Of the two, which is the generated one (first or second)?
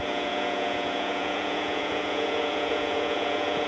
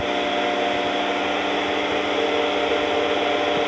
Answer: first